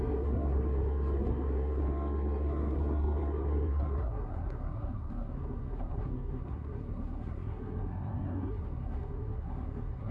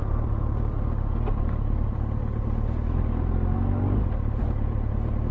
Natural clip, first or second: second